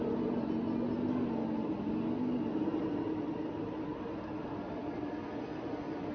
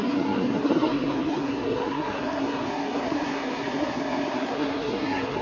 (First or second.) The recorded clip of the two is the first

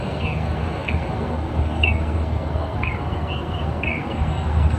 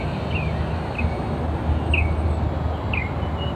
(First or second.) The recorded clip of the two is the second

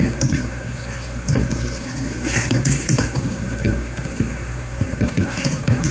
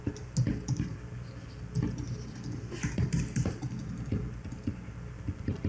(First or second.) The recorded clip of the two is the second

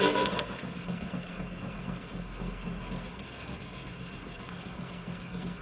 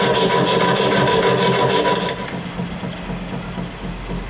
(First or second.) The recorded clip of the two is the second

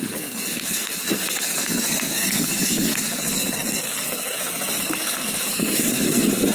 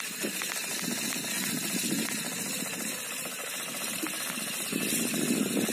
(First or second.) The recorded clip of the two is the second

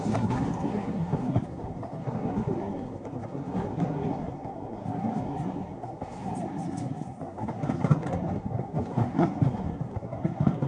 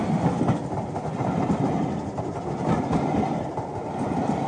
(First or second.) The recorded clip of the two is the second